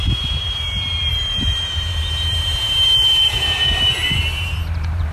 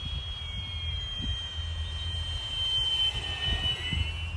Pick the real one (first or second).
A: second